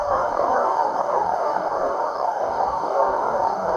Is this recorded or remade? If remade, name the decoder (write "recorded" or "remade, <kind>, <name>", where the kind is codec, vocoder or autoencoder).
remade, codec, DAC